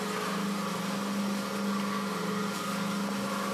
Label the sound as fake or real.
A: real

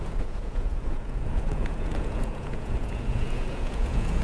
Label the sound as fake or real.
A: fake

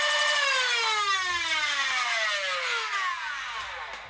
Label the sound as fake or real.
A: real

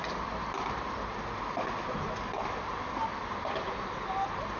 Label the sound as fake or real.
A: real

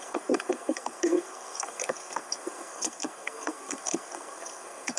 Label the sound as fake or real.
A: fake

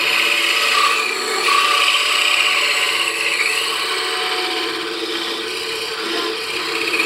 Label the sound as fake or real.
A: real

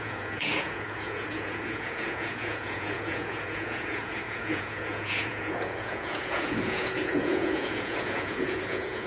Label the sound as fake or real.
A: fake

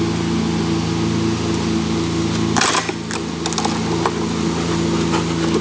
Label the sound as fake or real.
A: real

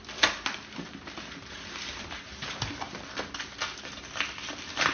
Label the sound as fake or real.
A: real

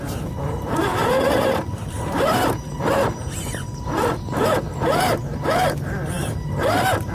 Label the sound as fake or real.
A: fake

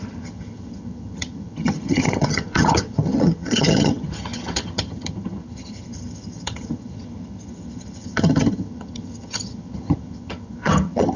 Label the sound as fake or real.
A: fake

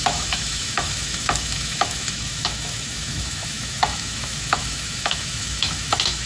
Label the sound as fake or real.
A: fake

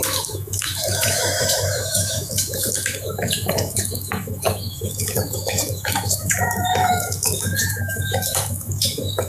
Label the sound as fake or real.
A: fake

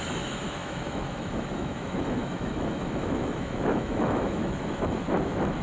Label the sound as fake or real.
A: fake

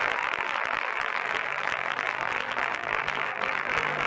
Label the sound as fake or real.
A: fake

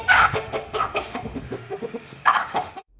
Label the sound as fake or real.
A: fake